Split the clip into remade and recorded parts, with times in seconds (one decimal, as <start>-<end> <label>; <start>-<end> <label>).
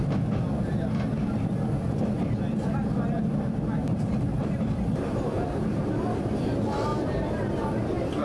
0.0-3.8 recorded; 3.8-5.8 remade; 5.8-6.9 recorded; 6.9-7.5 remade; 7.5-8.2 recorded